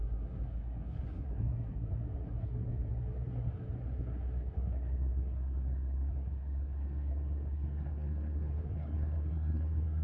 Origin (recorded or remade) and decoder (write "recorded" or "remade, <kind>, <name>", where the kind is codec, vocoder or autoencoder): remade, codec, SNAC